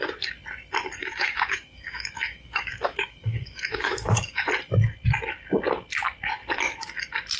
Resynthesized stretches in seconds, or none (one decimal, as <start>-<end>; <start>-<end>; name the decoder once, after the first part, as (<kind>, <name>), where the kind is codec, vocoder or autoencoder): 1.0-4.5 (autoencoder, DAC-VAE)